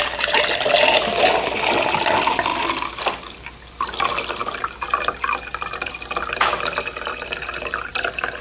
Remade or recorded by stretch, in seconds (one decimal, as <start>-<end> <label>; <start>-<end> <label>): 0.0-8.4 recorded